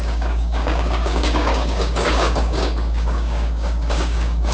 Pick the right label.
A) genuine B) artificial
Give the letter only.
B